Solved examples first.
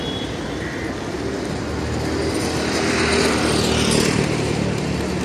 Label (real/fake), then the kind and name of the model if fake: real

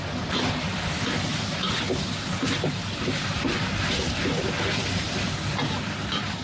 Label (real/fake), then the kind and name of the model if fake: real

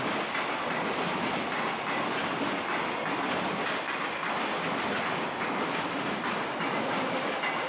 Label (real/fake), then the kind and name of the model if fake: real